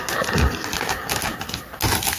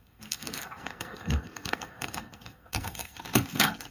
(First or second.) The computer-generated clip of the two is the second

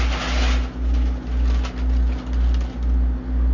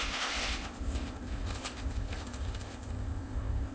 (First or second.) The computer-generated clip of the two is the second